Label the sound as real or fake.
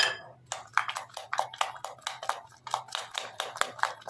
real